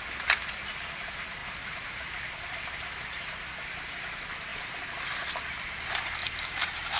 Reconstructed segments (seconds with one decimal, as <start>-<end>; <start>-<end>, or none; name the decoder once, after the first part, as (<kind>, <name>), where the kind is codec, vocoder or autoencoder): 1.4-2.2 (vocoder, BigVGAN v2); 6.2-7.0